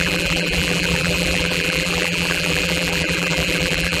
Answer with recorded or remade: remade